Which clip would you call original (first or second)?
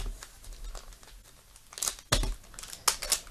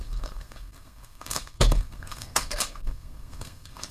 first